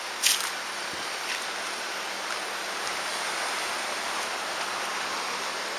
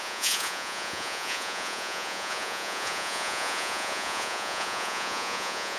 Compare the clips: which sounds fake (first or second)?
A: second